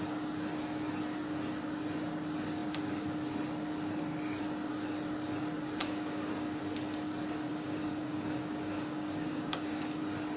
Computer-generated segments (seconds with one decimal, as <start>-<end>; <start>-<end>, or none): 5.8-6.6; 7.5-10.0